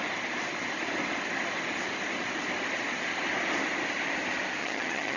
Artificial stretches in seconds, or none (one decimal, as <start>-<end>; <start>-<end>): 4.6-5.2